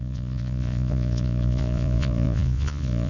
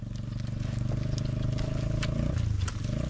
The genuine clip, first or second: second